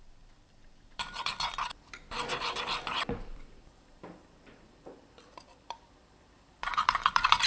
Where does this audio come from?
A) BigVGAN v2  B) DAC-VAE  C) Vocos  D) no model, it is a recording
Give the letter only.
A